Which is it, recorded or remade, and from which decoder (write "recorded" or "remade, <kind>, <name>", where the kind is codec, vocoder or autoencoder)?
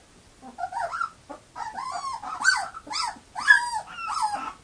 recorded